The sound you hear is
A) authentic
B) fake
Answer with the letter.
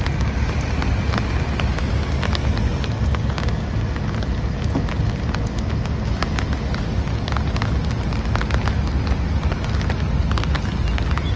A